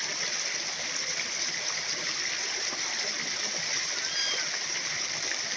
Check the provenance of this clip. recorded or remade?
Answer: remade